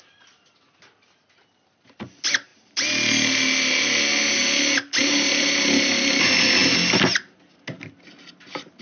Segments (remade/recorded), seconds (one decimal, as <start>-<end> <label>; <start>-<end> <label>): 0.0-8.8 recorded